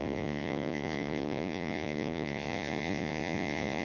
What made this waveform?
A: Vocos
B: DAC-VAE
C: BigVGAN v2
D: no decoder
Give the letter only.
A